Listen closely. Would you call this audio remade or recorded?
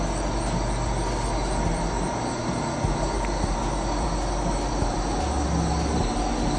recorded